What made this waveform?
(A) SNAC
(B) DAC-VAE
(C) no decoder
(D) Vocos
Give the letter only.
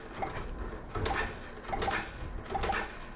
C